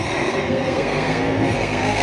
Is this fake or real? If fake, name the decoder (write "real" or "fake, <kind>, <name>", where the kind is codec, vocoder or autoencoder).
fake, codec, SNAC